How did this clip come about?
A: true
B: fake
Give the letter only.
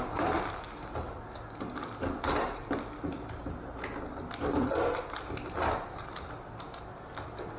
A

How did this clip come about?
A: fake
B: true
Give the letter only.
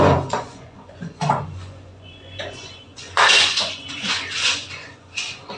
A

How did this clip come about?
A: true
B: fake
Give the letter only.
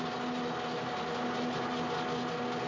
A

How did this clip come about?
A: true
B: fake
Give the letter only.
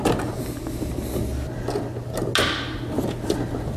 A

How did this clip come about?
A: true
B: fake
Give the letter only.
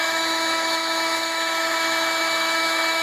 B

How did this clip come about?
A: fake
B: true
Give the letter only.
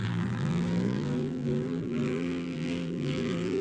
A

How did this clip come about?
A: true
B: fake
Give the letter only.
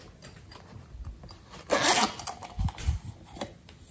A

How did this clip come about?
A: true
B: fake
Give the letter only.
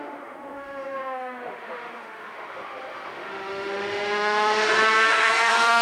B